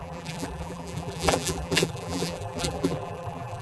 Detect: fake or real fake